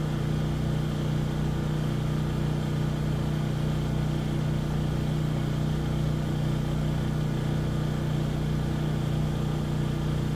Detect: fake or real real